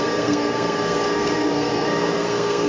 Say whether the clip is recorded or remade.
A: remade